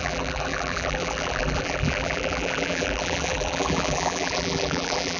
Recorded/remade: remade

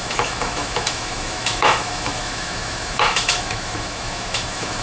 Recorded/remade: remade